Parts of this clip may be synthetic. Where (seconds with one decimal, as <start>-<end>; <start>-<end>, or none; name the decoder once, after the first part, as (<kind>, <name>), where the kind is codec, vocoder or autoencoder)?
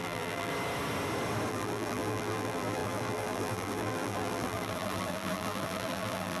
0.0-0.5 (vocoder, BigVGAN v2); 1.5-6.4